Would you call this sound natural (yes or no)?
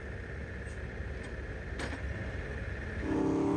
yes